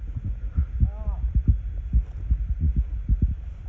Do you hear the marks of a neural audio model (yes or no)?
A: no